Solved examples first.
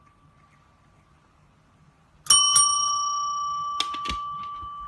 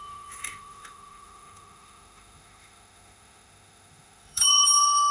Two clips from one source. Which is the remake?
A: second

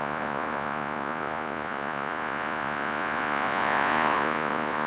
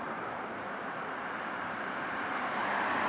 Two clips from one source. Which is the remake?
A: first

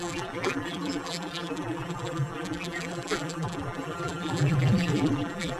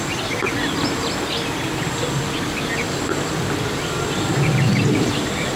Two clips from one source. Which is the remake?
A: first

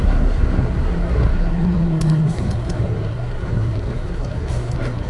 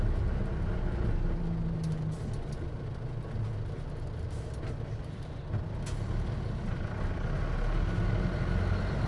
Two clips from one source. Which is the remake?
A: first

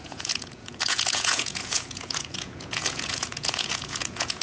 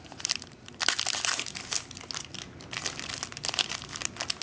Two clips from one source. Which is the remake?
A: first